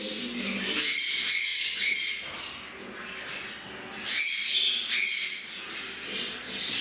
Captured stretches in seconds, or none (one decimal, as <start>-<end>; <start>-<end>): 0.0-6.8

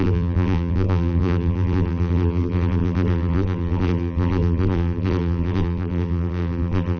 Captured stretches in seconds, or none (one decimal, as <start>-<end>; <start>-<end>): none